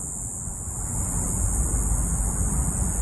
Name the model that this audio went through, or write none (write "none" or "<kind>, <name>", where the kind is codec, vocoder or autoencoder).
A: none